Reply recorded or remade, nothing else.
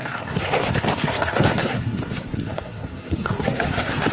remade